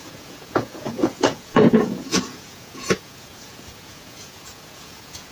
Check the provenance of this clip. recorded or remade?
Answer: remade